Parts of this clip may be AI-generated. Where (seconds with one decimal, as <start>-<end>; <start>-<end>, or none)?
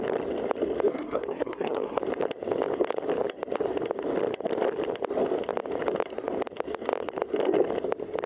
0.9-2.0